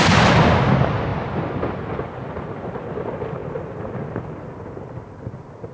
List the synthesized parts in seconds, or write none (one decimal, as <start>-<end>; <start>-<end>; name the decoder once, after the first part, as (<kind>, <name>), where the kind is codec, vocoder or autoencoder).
none